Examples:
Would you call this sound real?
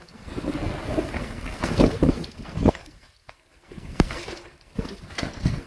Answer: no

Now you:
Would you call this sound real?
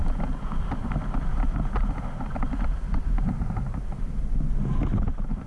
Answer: yes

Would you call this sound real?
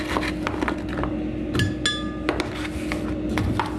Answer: yes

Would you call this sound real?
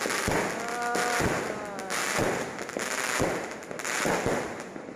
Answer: yes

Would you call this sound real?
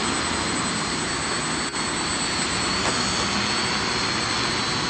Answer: yes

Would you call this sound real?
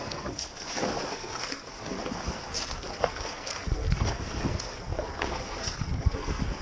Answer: no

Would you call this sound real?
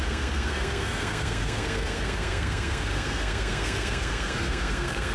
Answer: no